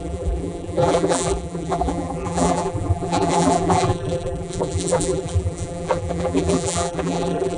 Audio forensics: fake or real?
fake